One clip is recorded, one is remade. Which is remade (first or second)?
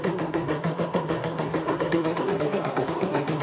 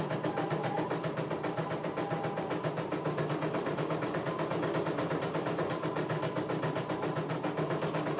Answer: first